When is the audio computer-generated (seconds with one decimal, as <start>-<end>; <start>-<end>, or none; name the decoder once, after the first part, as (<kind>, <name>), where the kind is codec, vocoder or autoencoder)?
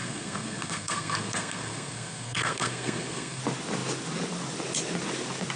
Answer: 0.0-3.4 (codec, SNAC)